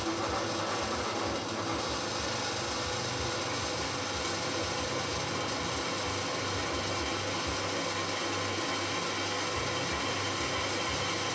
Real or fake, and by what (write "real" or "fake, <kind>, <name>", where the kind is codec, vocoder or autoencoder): real